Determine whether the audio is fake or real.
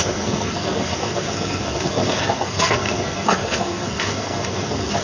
fake